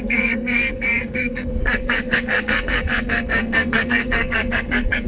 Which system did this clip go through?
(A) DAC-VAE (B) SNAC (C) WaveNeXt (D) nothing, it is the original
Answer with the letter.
B